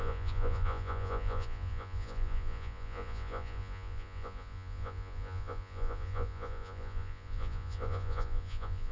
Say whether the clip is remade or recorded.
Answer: remade